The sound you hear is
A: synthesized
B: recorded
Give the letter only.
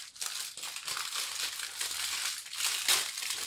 B